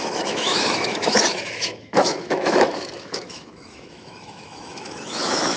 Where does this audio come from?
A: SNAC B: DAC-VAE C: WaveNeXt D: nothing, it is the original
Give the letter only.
B